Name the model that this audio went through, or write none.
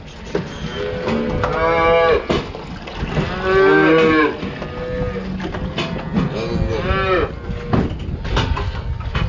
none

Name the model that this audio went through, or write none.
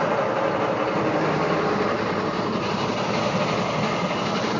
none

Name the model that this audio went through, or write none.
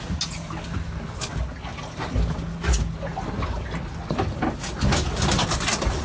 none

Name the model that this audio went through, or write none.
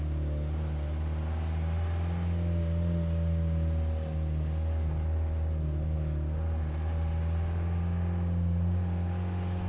none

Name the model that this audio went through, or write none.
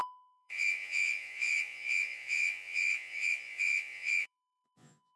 vocoder, Vocos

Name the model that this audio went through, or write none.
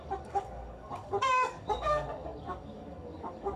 codec, DAC